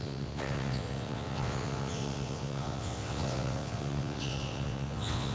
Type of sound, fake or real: fake